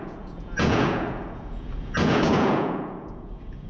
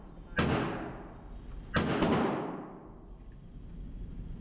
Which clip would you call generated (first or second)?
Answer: first